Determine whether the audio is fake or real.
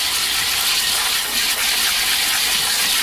real